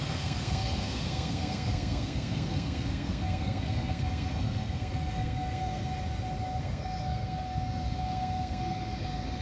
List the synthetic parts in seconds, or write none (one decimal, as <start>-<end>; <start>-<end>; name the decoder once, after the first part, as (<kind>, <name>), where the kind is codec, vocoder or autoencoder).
0.0-5.8 (codec, SNAC); 6.6-9.4